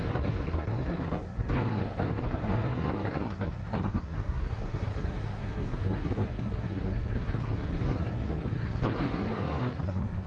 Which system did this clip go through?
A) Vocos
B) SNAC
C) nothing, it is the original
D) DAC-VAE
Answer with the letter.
B